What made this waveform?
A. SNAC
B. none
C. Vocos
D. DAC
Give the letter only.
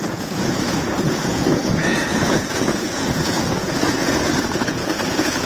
C